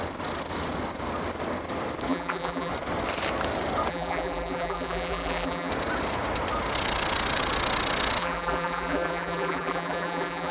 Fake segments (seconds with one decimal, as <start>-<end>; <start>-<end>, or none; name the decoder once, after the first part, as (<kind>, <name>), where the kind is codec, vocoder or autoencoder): 2.1-2.7 (vocoder, BigVGAN v2); 3.9-5.7; 8.2-10.5